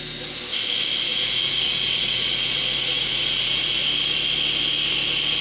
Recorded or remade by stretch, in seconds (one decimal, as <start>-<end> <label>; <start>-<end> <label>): 0.0-1.1 recorded; 1.1-3.8 remade; 3.8-5.4 recorded